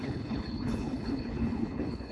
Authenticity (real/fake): fake